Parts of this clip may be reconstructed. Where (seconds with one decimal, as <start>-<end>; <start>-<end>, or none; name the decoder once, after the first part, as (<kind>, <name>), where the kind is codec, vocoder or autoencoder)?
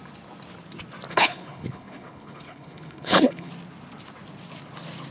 1.1-3.5 (codec, HILCodec)